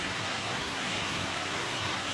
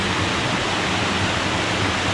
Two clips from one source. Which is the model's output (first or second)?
first